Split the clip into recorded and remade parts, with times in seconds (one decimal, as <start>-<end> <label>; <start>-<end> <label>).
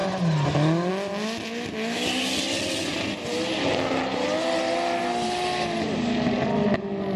0.0-7.2 recorded